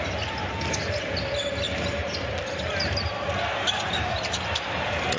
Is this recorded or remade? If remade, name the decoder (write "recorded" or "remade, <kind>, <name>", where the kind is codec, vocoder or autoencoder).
recorded